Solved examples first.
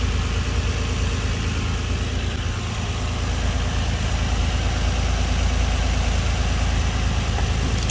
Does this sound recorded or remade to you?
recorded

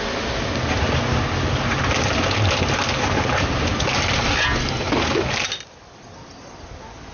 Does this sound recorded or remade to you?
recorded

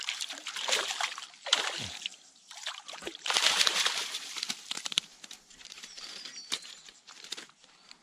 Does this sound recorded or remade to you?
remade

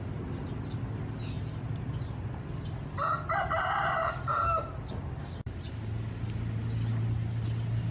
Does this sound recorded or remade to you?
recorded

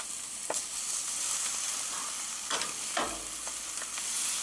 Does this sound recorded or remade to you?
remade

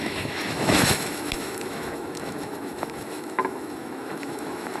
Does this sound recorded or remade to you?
remade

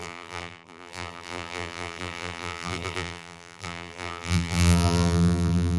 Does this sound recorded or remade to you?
remade